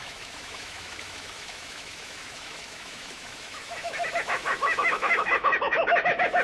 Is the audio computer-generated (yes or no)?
yes